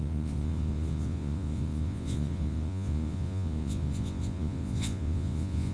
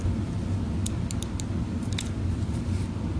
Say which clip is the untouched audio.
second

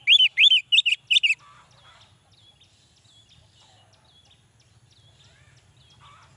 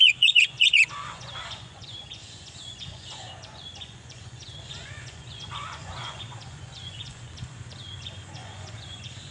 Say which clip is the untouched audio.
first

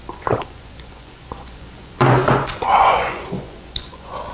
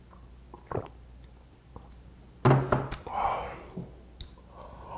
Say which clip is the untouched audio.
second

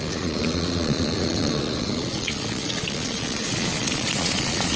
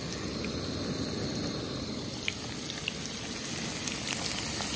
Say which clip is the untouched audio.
second